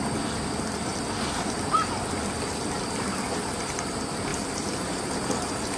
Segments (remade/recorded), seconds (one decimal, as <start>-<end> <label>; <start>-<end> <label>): 0.0-0.9 recorded; 0.9-3.9 remade; 3.9-4.3 recorded; 4.3-5.8 remade